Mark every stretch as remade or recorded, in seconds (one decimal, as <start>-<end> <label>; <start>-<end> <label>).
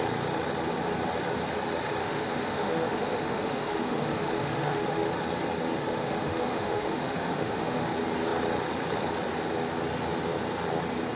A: 0.0-2.0 recorded; 2.0-5.1 remade; 5.1-5.8 recorded; 5.8-7.8 remade; 7.8-11.2 recorded